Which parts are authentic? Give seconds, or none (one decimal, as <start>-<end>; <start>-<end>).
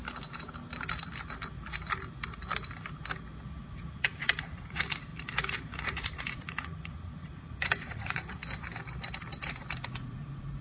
0.0-3.6; 5.1-5.8; 8.4-9.9